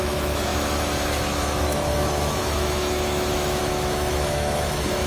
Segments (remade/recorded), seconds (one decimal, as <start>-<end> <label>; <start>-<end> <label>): 0.0-5.1 remade